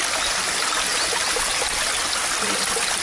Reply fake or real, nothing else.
real